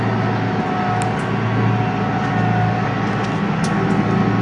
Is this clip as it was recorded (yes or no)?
yes